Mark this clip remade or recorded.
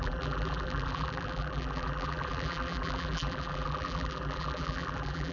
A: remade